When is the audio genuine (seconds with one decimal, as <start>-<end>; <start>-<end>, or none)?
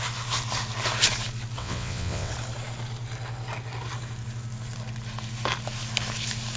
0.0-1.6; 2.3-6.6